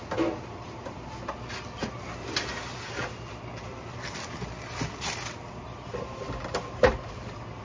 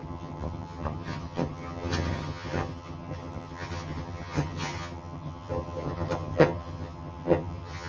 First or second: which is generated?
second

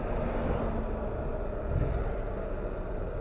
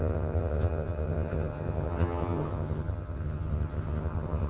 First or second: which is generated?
second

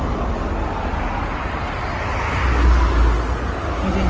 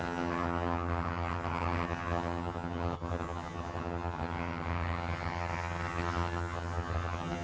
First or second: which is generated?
second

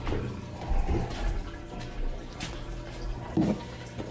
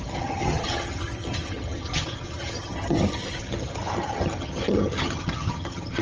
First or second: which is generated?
second